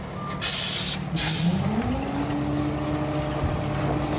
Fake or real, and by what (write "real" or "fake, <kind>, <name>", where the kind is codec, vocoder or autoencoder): real